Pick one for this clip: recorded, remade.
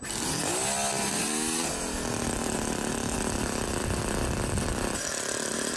recorded